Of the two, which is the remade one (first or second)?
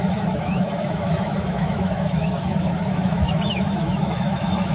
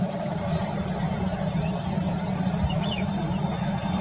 first